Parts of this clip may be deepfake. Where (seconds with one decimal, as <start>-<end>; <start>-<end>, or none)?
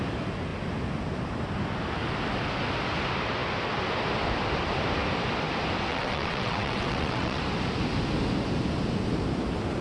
5.9-7.4